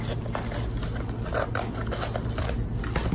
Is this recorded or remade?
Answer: recorded